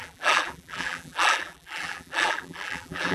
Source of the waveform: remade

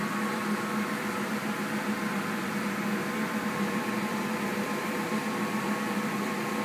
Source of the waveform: remade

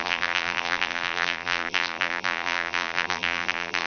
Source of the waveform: remade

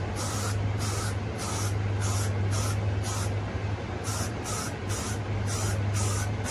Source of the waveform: recorded